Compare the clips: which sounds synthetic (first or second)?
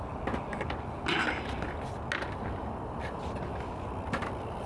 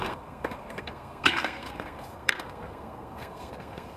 second